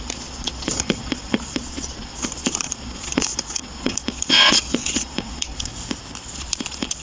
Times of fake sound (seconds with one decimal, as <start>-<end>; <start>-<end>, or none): 0.0-5.7; 6.3-7.0